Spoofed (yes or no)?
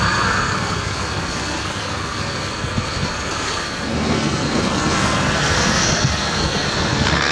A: yes